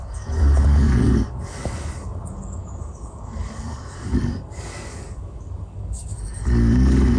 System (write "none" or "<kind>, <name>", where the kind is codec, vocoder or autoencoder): codec, DAC